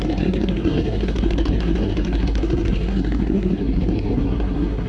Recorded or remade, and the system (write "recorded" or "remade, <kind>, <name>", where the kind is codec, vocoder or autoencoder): remade, codec, SNAC